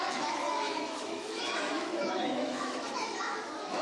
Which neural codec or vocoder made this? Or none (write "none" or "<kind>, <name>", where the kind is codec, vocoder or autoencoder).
autoencoder, DAC-VAE